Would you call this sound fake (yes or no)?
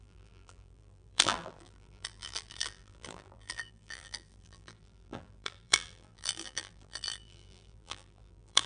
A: yes